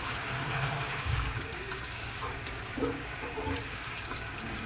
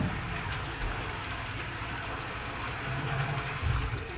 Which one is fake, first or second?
first